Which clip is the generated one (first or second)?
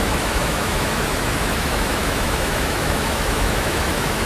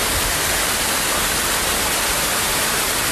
first